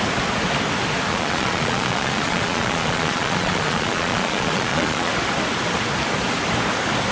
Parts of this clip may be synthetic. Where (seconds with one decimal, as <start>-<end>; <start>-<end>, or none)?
1.1-5.1